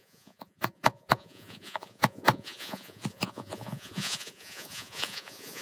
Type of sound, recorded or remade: remade